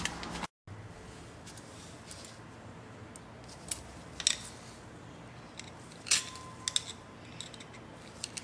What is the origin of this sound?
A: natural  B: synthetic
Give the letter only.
A